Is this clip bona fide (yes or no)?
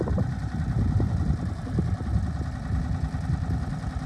yes